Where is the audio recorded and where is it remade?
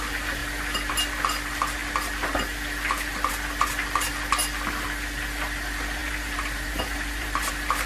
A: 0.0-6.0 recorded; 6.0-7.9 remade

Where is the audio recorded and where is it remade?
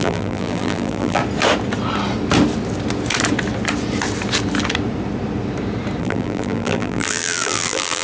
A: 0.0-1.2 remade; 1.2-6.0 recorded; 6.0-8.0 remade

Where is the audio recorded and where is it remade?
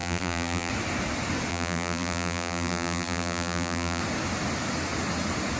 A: 0.0-0.7 remade; 0.7-1.5 recorded; 1.5-4.0 remade; 4.0-5.6 recorded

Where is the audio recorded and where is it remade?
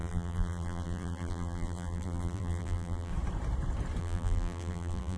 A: 0.0-3.1 remade; 3.1-4.0 recorded; 4.0-5.2 remade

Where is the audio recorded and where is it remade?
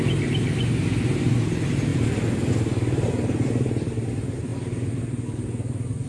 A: 0.0-1.9 remade; 1.9-2.5 recorded; 2.5-4.5 remade; 4.5-6.1 recorded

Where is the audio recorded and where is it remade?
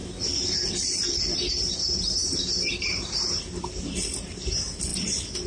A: 0.0-0.7 recorded; 0.7-4.9 remade; 4.9-5.5 recorded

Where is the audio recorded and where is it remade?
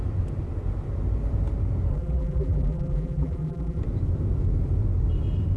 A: 0.0-1.9 recorded; 1.9-3.8 remade; 3.8-5.6 recorded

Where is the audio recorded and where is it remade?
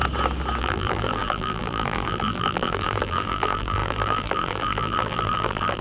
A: 0.0-0.6 recorded; 0.6-5.8 remade